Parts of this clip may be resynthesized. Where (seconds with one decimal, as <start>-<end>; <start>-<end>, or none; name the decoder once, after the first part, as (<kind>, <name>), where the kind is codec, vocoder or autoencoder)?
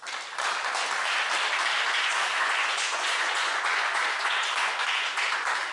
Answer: 2.1-5.3 (vocoder, Vocos)